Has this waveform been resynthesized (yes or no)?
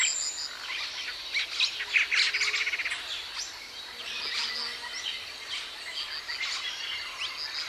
no